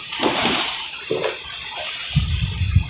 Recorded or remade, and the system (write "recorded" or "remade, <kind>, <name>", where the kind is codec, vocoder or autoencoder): recorded